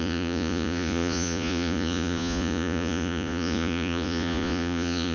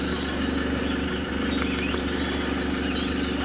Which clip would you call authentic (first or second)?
second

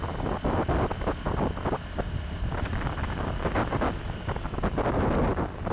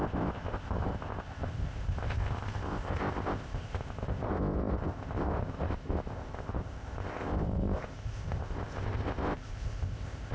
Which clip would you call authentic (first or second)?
first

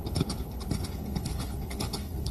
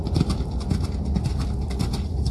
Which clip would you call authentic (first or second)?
second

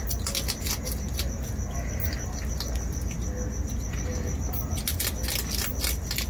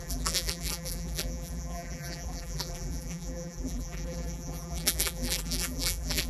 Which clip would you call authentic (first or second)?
first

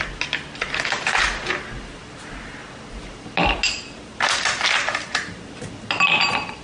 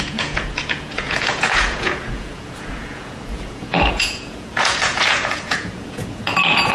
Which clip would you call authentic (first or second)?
first